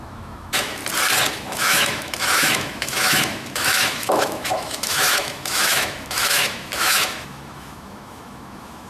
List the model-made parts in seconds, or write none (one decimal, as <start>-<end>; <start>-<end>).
0.0-0.8; 1.3-8.9